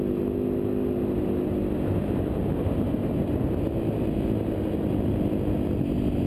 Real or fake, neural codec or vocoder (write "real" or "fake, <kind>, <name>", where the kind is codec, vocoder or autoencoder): real